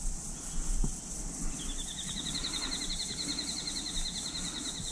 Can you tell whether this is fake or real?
real